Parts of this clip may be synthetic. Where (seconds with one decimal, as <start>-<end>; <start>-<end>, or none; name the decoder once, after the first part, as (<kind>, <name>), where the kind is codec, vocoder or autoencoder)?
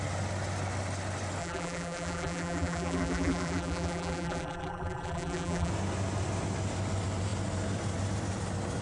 1.4-5.7 (vocoder, BigVGAN v2)